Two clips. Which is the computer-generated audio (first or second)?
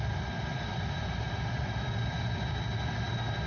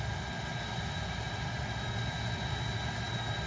first